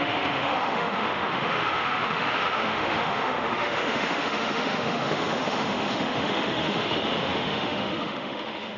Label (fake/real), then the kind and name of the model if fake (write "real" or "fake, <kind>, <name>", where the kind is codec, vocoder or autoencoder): fake, autoencoder, DAC-VAE